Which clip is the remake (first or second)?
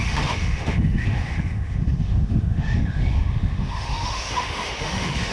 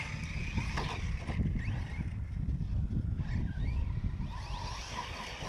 first